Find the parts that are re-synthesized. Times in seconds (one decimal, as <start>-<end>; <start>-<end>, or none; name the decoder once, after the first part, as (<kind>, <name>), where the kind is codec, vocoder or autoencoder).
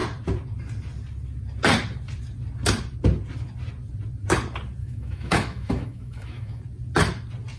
4.8-6.6 (autoencoder, DAC-VAE)